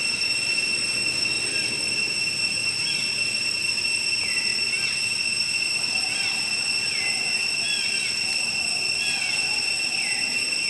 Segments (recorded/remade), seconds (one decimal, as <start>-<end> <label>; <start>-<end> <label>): 0.0-10.7 recorded